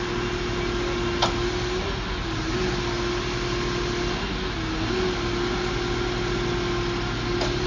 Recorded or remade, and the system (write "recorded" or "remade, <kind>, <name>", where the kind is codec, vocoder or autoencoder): recorded